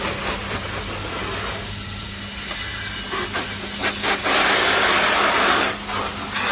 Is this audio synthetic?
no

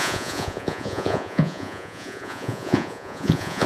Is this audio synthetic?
yes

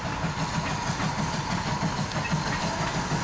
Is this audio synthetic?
no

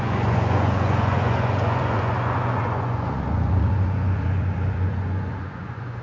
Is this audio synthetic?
yes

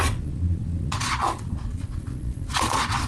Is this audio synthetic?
yes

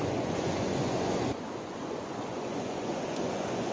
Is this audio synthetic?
yes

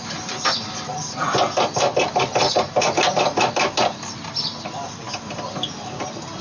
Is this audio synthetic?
no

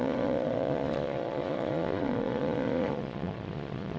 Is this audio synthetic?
yes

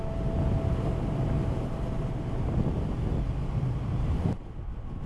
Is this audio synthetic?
no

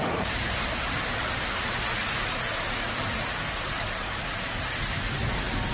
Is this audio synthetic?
no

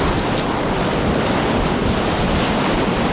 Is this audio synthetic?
no